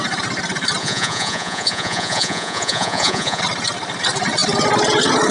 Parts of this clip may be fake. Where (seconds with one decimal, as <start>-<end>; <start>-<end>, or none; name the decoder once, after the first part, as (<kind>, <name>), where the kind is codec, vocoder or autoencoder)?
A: 0.8-3.4 (vocoder, Vocos)